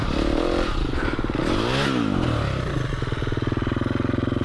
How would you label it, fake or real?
real